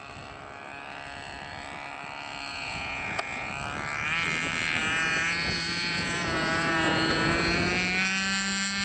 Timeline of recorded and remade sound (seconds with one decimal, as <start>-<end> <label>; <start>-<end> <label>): 0.0-2.5 recorded; 2.5-3.5 remade; 3.5-4.8 recorded; 4.8-7.7 remade; 7.7-8.8 recorded